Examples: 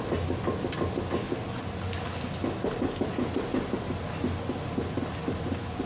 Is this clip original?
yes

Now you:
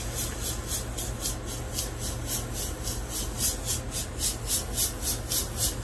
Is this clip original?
yes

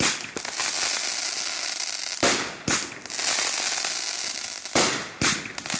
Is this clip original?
yes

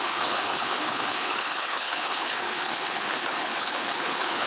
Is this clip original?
no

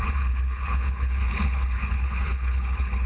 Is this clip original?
no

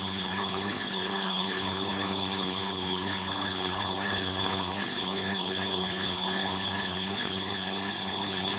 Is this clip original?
no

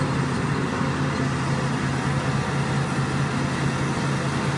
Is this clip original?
yes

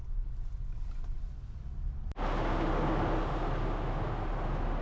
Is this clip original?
yes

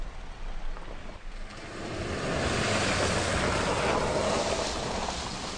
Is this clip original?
yes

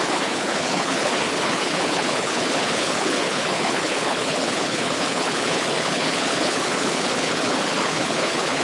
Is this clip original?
no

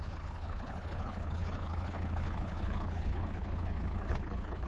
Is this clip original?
no